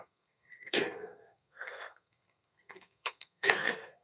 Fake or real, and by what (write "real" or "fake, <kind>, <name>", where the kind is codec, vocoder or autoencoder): fake, codec, SNAC